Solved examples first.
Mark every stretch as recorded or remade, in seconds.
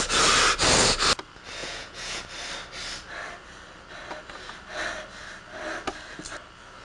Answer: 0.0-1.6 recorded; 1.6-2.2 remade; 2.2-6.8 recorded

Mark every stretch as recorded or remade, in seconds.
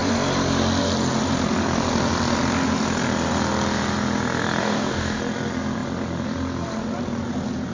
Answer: 0.0-4.6 recorded; 4.6-5.2 remade; 5.2-7.7 recorded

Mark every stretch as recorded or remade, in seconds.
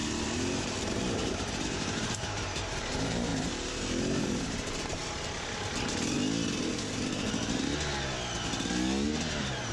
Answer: 0.0-0.8 recorded; 0.8-3.3 remade; 3.3-4.2 recorded; 4.2-5.0 remade; 5.0-9.2 recorded; 9.2-9.7 remade